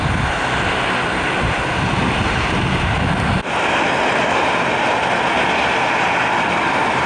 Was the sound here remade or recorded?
recorded